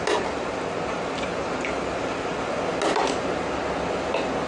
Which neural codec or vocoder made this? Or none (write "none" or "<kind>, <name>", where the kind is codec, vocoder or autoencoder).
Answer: none